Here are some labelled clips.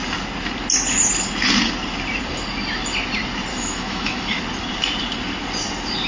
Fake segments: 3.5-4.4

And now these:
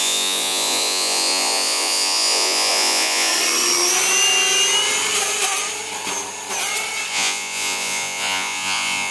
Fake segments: 0.0-3.3; 7.1-9.1

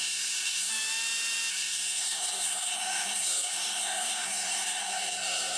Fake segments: 0.0-0.7; 1.5-5.6

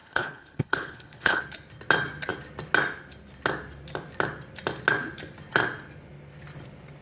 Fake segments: 0.0-1.4

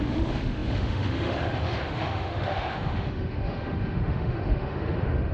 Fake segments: 0.0-5.3

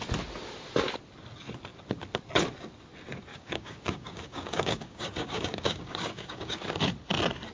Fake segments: 3.3-6.6

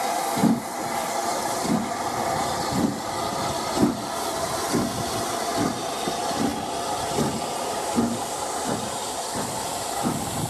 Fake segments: 0.0-3.8; 4.3-10.5

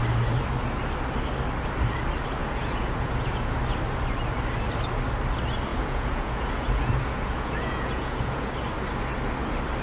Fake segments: 2.4-3.6; 5.7-8.5